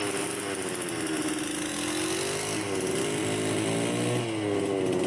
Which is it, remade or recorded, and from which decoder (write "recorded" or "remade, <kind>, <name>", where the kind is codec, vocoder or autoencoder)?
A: recorded